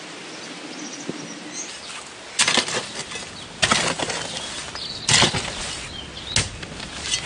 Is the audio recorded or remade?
recorded